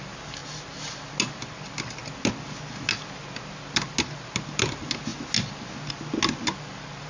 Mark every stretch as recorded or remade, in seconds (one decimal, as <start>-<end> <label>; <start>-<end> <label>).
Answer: 0.0-7.1 recorded

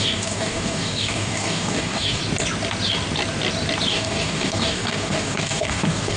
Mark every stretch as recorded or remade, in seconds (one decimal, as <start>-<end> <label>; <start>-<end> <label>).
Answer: 0.0-2.2 remade; 2.2-3.9 recorded; 3.9-6.2 remade

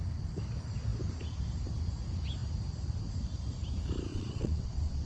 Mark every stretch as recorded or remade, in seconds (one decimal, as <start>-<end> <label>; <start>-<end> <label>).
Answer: 0.0-4.1 recorded; 4.1-5.1 remade

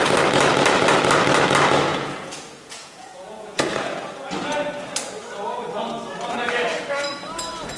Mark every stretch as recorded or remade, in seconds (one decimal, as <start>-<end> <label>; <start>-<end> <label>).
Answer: 0.0-1.9 recorded; 1.9-4.0 remade; 4.0-7.8 recorded